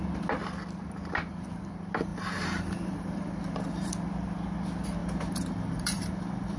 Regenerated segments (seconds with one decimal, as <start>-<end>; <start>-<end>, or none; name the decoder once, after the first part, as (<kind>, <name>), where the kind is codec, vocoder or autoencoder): 2.1-3.9 (vocoder, BigVGAN v2); 5.0-6.6